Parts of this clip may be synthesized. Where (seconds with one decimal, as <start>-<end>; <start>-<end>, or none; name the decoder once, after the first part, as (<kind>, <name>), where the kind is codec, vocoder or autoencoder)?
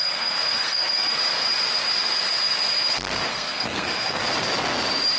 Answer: 0.0-1.2 (codec, SNAC); 3.3-4.2